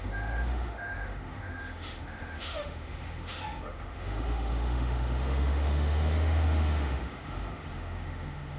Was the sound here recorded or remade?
remade